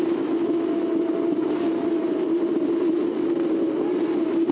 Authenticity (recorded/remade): recorded